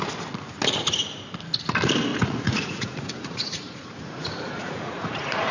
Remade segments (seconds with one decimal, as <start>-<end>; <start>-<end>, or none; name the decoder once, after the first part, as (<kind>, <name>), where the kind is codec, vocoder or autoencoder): 2.1-5.5 (vocoder, Vocos)